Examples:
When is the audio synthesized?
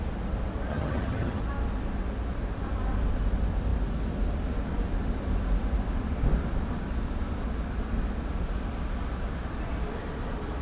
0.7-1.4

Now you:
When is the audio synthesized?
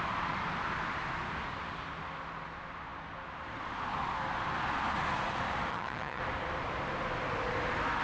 5.7-6.2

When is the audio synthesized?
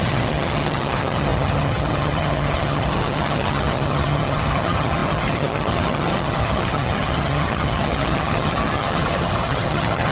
0.0-10.1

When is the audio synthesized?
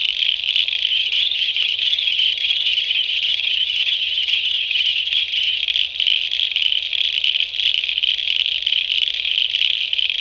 0.9-5.6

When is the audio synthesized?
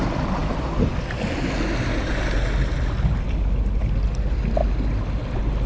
none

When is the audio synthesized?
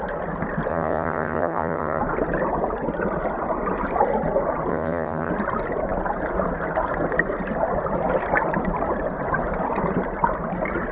0.7-2.0; 4.7-5.3